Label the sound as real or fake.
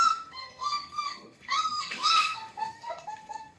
fake